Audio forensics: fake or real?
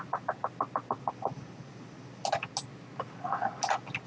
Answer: real